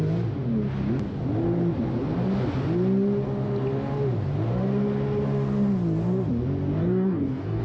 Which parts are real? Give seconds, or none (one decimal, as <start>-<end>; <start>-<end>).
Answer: 0.0-6.8